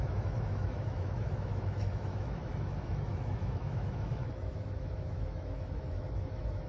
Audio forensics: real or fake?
fake